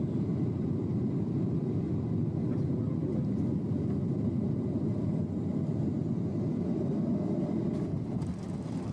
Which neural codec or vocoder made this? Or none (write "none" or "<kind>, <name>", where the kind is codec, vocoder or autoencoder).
none